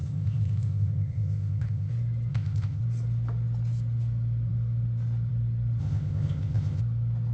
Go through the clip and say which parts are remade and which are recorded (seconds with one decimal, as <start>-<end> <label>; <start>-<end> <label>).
0.0-1.9 remade; 1.9-2.3 recorded; 2.3-2.8 remade; 2.8-5.8 recorded; 5.8-6.8 remade; 6.8-7.3 recorded